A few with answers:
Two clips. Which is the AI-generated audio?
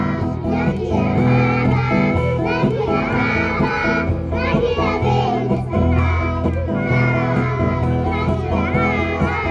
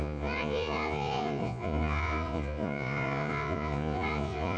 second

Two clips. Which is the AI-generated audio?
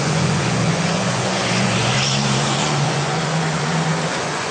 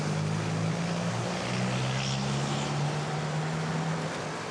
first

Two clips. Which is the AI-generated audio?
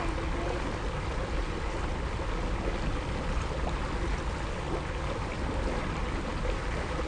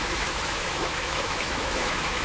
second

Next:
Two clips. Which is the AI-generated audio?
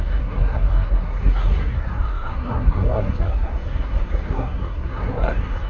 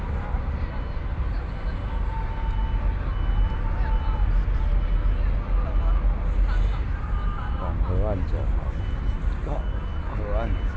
first